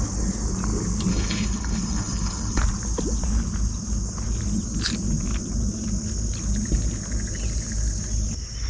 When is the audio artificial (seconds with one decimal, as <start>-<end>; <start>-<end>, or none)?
1.1-2.6